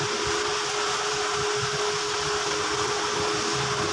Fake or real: real